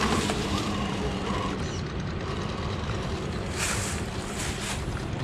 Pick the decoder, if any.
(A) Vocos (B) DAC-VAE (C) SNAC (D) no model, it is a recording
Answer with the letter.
D